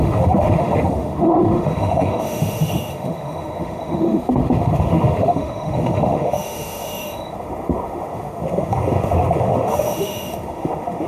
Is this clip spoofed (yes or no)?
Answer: yes